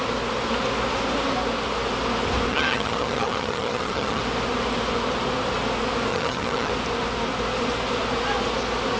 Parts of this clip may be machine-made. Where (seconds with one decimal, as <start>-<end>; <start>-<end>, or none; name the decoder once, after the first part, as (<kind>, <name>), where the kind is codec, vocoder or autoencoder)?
2.5-4.2 (vocoder, HiFi-GAN); 6.1-6.7